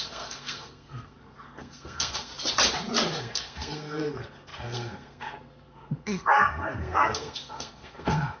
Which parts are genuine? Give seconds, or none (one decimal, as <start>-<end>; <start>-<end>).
2.3-3.2